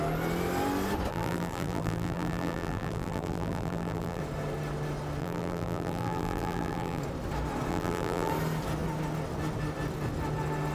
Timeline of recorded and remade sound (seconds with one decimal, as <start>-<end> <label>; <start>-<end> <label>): 0.0-1.1 recorded; 1.1-4.2 remade; 4.2-5.2 recorded; 5.2-7.0 remade; 7.0-7.7 recorded; 7.7-8.3 remade; 8.3-10.7 recorded